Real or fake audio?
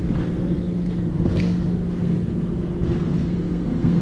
fake